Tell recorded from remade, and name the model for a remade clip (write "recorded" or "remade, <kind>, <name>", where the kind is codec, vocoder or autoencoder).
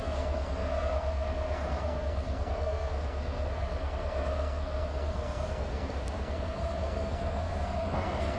remade, codec, SNAC